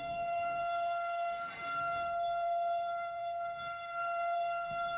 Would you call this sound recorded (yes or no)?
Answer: no